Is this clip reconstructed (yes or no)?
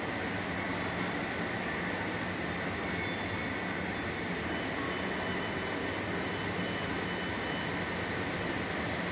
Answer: no